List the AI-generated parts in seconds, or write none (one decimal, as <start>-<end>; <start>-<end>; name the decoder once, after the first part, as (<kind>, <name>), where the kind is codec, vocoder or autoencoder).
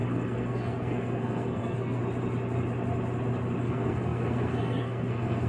0.0-2.0 (codec, SNAC); 3.6-5.5